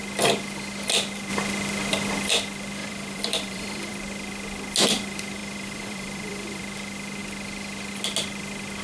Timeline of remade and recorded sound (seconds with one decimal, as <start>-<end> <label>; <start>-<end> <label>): 0.0-2.8 recorded; 2.8-3.9 remade; 3.9-5.4 recorded; 5.4-6.6 remade; 6.6-8.8 recorded